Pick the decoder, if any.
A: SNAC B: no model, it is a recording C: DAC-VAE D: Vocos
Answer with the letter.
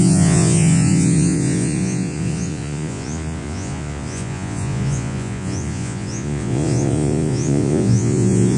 D